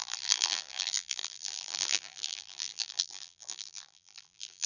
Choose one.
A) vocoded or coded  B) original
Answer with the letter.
A